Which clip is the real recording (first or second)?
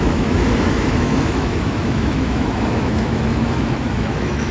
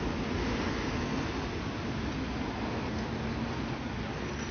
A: second